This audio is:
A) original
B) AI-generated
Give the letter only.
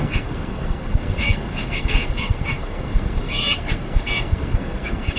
B